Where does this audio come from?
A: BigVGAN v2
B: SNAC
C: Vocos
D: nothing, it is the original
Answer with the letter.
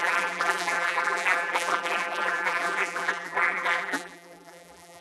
A